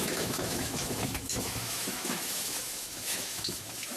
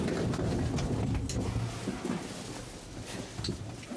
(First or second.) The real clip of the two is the second